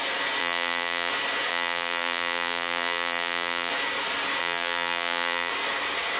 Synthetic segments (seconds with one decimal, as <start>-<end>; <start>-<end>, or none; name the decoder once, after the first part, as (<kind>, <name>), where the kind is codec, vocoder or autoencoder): 0.4-1.1 (vocoder, BigVGAN v2); 1.5-3.7; 4.4-5.5